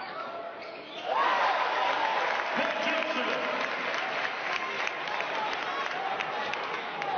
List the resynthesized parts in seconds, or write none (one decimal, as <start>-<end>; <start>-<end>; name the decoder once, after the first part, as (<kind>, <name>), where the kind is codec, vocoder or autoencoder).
0.0-2.1 (codec, DAC); 6.4-7.2